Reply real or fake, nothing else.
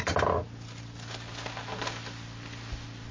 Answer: real